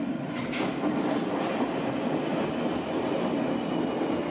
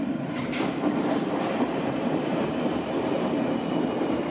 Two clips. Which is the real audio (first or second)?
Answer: first